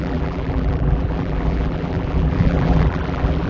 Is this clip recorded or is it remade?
remade